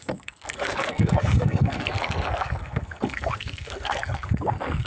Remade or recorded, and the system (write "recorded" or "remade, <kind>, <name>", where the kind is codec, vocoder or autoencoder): remade, codec, SNAC